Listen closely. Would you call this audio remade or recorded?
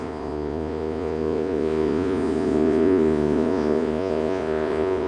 remade